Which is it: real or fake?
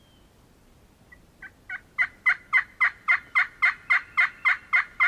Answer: real